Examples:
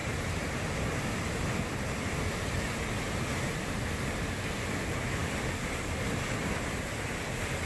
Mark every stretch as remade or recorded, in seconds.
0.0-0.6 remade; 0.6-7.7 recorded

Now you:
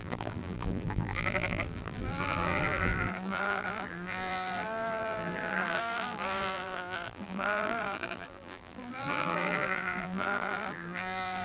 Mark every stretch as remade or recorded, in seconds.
0.0-11.4 remade

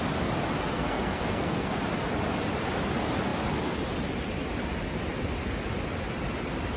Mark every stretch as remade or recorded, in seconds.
0.0-0.6 recorded; 0.6-1.8 remade; 1.8-6.8 recorded

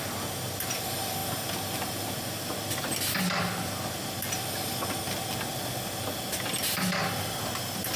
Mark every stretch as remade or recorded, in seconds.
0.0-1.2 recorded; 1.2-2.7 remade; 2.7-8.0 recorded

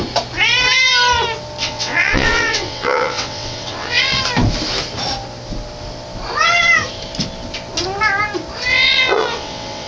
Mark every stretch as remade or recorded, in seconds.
0.0-1.6 recorded; 1.6-4.2 remade; 4.2-8.7 recorded; 8.7-9.9 remade

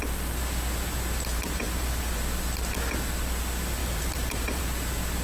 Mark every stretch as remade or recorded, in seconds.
0.0-1.3 recorded; 1.3-2.2 remade; 2.2-3.8 recorded; 3.8-4.6 remade; 4.6-5.2 recorded